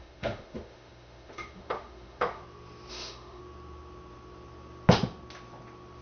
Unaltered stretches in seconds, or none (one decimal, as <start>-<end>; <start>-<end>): 2.4-2.9; 3.4-6.0